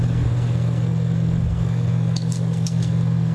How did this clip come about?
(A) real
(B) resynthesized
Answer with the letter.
B